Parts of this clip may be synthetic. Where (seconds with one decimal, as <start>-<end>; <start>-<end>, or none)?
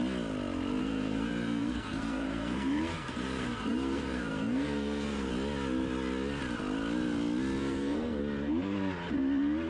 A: 0.8-5.3; 7.6-8.2